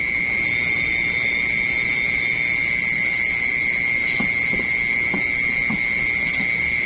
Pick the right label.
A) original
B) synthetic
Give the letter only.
A